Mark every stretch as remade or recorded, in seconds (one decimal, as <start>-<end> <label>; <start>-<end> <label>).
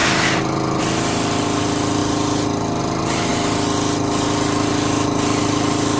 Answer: 0.0-6.0 recorded